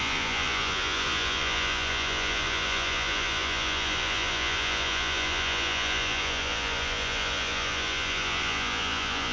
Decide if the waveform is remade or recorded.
remade